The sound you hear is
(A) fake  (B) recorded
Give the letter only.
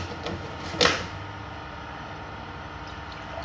B